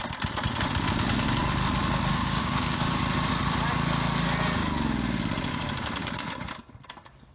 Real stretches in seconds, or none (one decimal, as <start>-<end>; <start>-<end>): 0.0-2.1; 2.9-5.5; 6.3-7.3